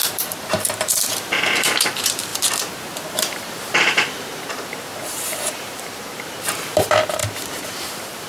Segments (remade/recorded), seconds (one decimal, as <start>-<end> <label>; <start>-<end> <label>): 0.0-8.3 remade